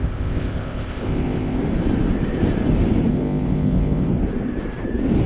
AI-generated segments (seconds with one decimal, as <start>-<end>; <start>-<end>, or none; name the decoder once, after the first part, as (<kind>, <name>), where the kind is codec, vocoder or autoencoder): 0.0-1.6 (codec, ZipCodec); 3.1-4.1